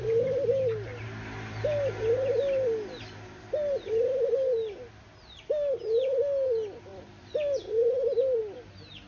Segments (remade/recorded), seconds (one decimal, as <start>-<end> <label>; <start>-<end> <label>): 0.0-9.1 recorded